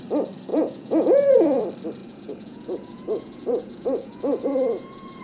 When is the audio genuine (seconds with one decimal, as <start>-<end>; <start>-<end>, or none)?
0.0-0.5; 1.6-2.0